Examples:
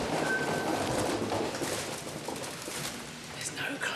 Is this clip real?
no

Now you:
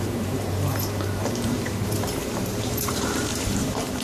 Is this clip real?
no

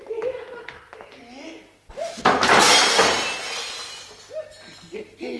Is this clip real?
yes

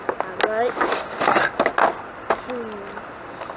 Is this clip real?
yes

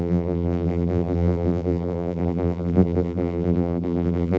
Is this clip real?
no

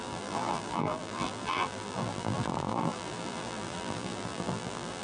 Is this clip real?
no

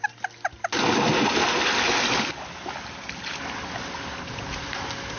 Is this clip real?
yes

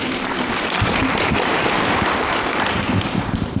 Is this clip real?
no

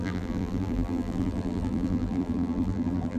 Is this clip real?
no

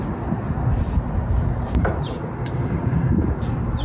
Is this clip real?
yes